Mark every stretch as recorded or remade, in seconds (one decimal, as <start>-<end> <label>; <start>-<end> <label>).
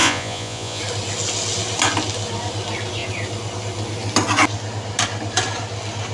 0.0-0.8 remade; 0.8-6.1 recorded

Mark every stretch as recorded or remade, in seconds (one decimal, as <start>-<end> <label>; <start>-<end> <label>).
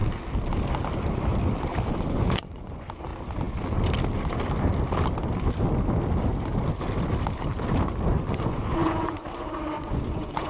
0.0-2.1 recorded; 2.1-3.1 remade; 3.1-8.3 recorded; 8.3-10.5 remade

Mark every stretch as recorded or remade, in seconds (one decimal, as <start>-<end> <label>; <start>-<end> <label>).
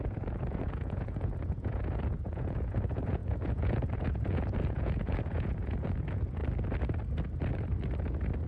0.0-6.4 remade; 6.4-8.5 recorded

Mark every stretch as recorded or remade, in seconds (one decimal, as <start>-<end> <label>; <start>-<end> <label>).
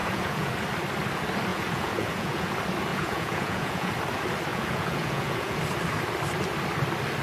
0.0-0.5 remade; 0.5-1.5 recorded; 1.5-2.5 remade; 2.5-2.9 recorded; 2.9-3.9 remade; 3.9-4.5 recorded; 4.5-5.6 remade; 5.6-7.2 recorded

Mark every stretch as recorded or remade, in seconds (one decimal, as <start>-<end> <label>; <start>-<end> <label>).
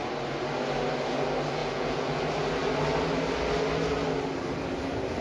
0.0-1.6 recorded; 1.6-2.2 remade; 2.2-5.2 recorded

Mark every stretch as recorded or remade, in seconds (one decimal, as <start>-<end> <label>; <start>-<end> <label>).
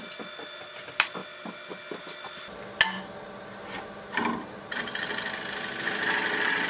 0.0-6.7 recorded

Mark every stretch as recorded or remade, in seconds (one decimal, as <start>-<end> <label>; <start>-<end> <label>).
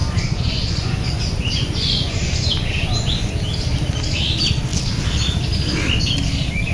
0.0-3.3 remade; 3.3-6.7 recorded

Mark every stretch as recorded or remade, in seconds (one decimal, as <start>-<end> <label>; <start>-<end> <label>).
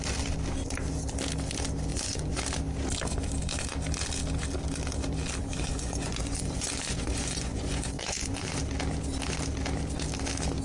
0.0-1.9 recorded; 1.9-2.4 remade; 2.4-5.4 recorded; 5.4-8.6 remade; 8.6-10.6 recorded